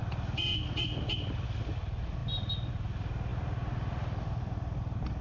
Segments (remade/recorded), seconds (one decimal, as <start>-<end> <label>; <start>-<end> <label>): 0.0-5.2 recorded